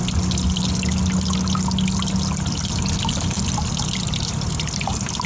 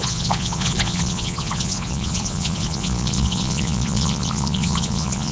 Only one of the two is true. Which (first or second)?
first